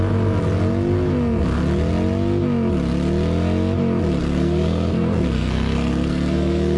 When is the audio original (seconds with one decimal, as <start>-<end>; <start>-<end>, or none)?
0.0-4.2